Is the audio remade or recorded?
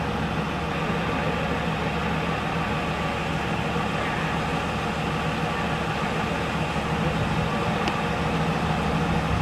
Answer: recorded